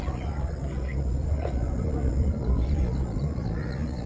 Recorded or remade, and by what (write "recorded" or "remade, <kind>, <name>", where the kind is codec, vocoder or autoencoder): remade, vocoder, Vocos